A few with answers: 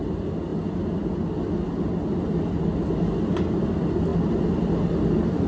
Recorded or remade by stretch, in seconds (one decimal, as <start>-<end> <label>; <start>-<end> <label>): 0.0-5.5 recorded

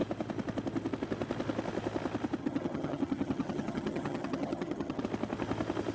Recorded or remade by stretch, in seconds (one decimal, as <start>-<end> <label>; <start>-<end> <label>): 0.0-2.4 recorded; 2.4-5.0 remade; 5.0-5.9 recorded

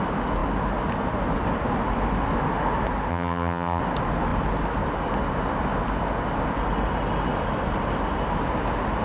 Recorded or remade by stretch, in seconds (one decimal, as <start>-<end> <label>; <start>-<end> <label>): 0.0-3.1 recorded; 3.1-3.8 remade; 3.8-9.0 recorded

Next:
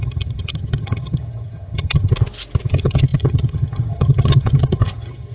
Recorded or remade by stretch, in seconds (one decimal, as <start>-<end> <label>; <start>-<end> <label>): 0.0-2.1 remade; 2.1-2.7 recorded; 2.7-5.3 remade